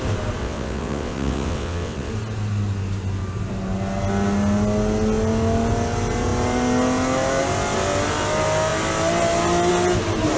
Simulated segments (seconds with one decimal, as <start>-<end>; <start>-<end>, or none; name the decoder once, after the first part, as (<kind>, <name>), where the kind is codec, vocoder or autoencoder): 0.4-2.1 (vocoder, WaveNeXt)